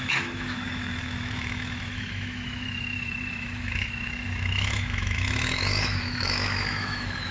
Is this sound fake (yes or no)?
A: yes